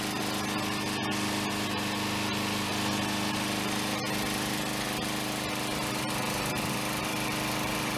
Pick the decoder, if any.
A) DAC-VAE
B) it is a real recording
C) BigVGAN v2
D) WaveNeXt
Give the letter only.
B